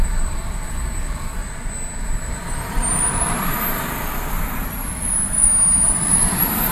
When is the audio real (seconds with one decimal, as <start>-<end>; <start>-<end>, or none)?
1.4-2.0